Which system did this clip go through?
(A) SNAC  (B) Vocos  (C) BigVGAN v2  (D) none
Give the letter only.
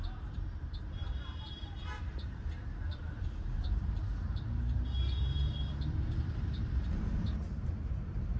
C